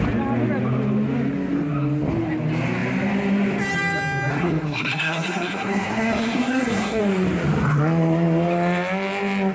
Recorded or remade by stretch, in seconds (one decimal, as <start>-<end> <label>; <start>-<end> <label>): 0.0-4.3 recorded; 4.3-7.0 remade; 7.0-9.5 recorded